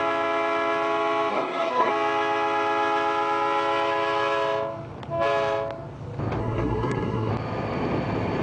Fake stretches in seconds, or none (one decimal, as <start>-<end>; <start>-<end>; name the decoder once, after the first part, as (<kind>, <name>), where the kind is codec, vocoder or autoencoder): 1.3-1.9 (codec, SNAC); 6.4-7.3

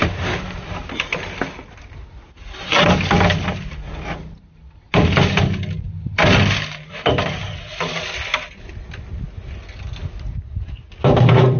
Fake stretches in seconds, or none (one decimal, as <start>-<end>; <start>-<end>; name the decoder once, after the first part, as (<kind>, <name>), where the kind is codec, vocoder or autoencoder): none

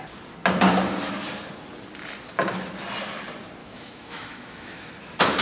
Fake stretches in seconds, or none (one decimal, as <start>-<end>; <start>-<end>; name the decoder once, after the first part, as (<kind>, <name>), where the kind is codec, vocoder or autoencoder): 3.6-4.9 (autoencoder, DAC-VAE)

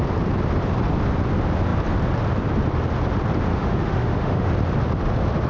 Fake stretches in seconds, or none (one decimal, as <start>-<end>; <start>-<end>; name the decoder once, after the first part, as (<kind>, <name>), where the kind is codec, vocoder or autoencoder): 3.5-4.5 (autoencoder, DAC-VAE)

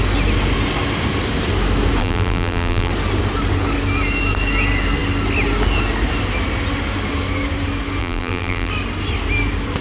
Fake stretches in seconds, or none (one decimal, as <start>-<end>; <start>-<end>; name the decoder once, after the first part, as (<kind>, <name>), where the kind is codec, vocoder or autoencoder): 2.0-2.9 (vocoder, BigVGAN v2); 8.0-8.7

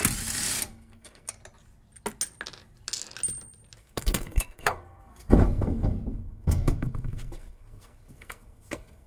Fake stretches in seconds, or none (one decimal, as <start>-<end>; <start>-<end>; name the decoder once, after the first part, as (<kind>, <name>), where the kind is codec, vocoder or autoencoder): 0.7-1.3 (codec, SNAC); 3.8-9.1

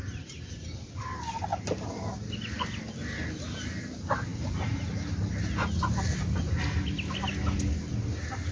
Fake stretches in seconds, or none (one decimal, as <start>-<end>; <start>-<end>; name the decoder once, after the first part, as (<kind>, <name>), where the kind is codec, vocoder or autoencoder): none

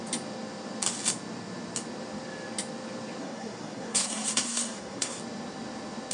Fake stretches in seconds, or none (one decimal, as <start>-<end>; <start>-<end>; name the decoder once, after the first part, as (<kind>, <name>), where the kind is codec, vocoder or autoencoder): 3.2-5.2 (codec, SNAC)